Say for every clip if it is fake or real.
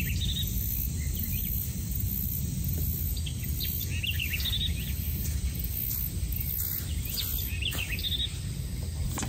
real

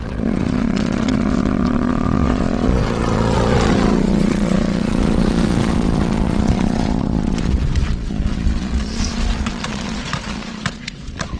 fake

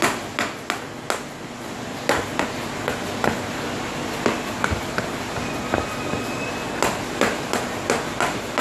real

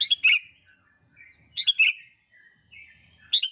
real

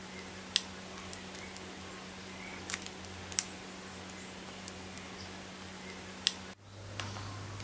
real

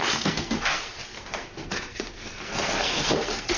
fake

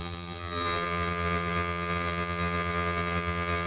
fake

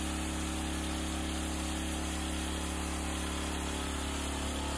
real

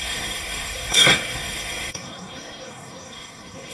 fake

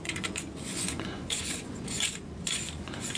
fake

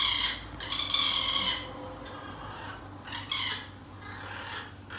real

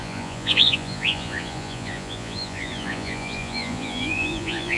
fake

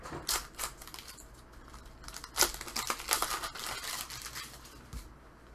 real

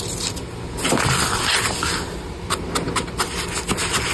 real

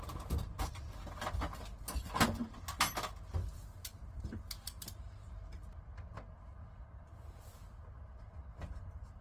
real